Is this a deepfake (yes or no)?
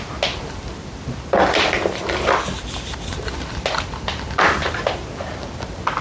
no